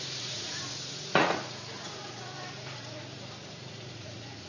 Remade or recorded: remade